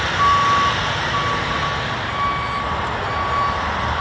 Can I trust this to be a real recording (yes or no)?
yes